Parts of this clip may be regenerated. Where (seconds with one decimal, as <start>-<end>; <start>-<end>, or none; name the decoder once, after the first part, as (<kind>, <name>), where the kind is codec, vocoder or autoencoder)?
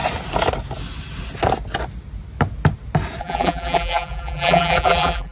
3.2-5.3 (vocoder, BigVGAN v2)